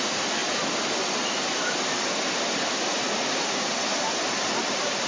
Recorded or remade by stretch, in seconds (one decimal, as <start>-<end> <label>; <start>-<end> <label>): 0.0-0.4 remade; 0.4-3.1 recorded; 3.1-3.7 remade; 3.7-4.3 recorded; 4.3-5.1 remade